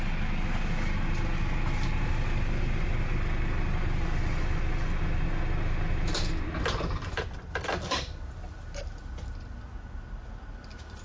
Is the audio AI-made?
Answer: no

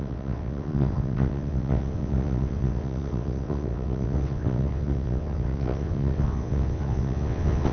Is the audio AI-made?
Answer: yes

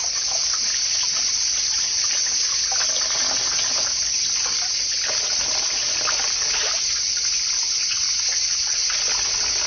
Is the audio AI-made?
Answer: no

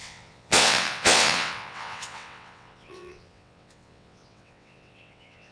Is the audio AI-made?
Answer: yes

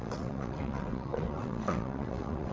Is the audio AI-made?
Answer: yes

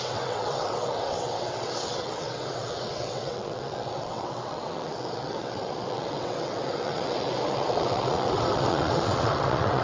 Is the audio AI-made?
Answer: yes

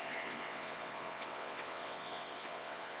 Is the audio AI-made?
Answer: yes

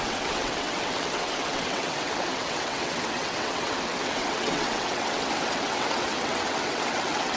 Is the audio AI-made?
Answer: yes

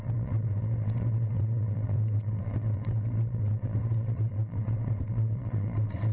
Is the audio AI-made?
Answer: yes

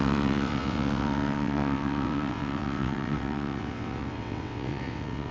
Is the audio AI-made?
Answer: yes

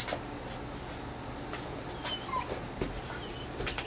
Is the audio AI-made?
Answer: no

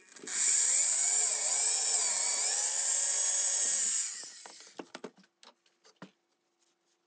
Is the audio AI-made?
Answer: no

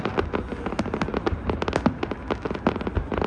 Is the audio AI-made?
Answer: no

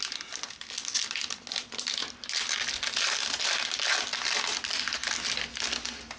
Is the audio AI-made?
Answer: no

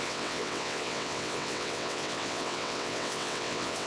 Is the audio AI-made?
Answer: yes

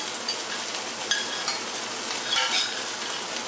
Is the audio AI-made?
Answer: no